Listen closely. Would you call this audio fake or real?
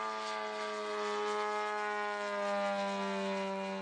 real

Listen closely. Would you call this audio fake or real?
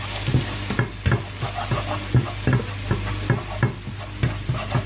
real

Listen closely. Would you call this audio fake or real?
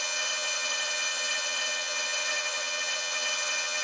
fake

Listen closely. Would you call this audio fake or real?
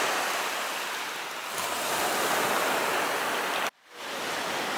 real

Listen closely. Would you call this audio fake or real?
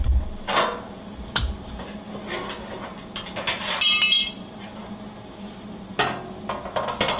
real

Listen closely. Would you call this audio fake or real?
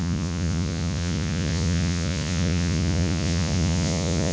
fake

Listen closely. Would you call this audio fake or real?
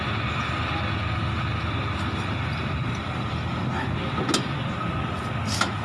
real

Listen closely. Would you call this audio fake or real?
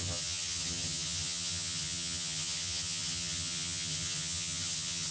fake